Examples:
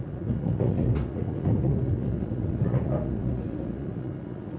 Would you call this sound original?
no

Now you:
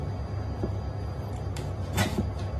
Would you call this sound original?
yes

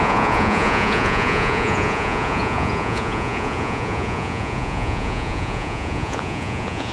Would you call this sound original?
no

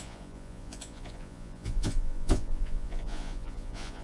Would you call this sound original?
no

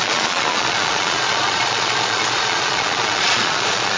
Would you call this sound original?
no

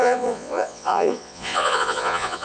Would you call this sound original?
no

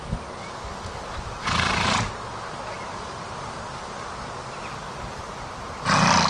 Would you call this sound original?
yes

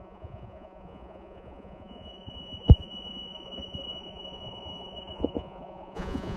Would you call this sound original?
no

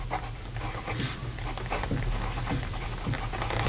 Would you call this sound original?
yes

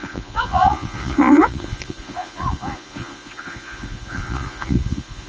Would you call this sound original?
no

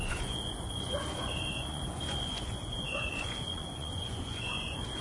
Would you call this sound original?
no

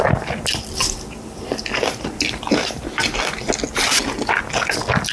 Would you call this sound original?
yes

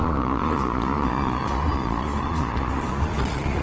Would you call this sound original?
no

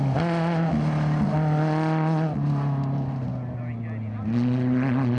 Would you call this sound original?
yes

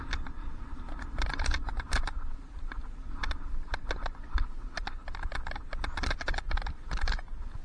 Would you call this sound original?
yes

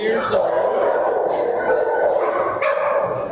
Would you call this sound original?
yes